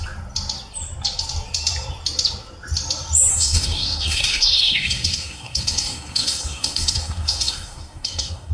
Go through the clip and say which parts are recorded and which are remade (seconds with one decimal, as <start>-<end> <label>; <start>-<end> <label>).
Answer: 0.0-3.3 recorded; 3.3-8.5 remade